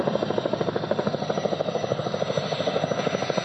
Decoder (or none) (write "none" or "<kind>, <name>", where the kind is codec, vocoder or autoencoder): none